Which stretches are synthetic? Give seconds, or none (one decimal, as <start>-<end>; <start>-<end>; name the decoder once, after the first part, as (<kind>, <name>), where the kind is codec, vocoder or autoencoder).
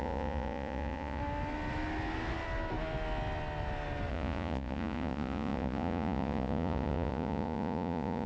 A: 0.0-1.2 (vocoder, Vocos); 4.1-8.3